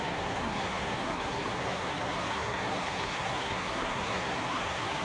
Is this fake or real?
fake